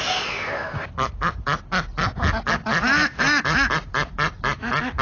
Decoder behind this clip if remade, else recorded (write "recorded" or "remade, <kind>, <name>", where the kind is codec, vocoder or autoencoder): recorded